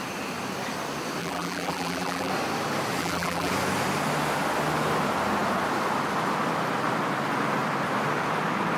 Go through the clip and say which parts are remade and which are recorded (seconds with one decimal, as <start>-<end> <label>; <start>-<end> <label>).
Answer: 0.0-1.2 recorded; 1.2-2.3 remade; 2.3-3.0 recorded; 3.0-3.5 remade; 3.5-8.8 recorded